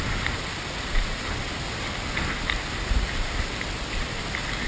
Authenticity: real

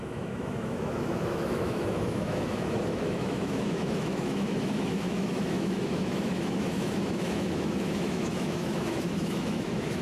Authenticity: fake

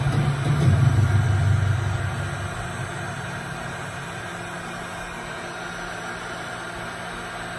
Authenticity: real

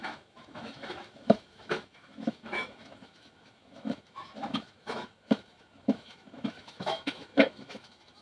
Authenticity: fake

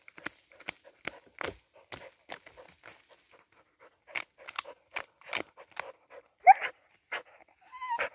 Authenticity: real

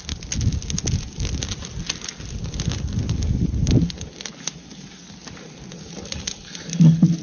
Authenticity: real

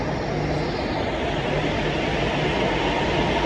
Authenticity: real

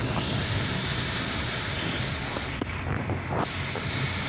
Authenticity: real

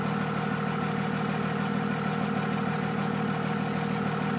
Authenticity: real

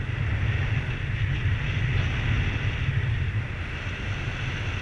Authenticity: real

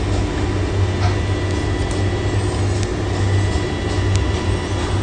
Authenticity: real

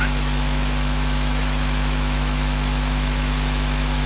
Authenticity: fake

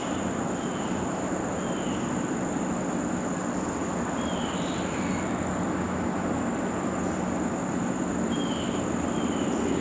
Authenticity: real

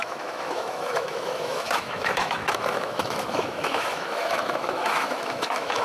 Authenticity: fake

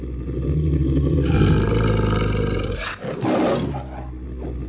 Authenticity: real